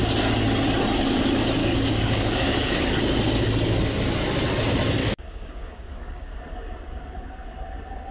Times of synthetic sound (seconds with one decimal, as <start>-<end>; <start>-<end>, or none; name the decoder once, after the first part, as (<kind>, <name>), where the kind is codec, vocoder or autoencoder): 1.6-2.9 (codec, DAC); 5.0-6.4